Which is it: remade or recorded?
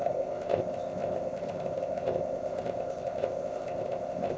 remade